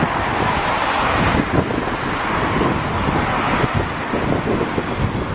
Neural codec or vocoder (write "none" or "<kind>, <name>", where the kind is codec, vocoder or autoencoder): none